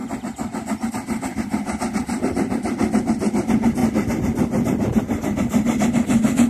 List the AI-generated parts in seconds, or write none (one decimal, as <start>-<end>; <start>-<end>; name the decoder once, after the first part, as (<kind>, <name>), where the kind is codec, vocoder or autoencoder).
0.9-3.8 (vocoder, BigVGAN v2)